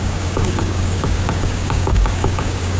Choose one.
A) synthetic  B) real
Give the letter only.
A